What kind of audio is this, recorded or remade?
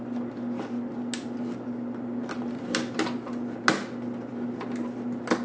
recorded